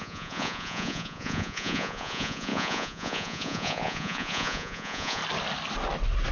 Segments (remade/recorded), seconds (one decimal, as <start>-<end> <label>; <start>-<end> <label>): 0.0-5.2 remade; 5.2-6.3 recorded